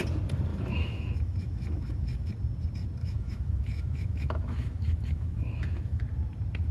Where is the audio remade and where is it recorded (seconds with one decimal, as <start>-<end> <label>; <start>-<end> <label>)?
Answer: 0.0-0.5 recorded; 0.5-2.3 remade; 2.3-3.0 recorded; 3.0-6.0 remade; 6.0-6.7 recorded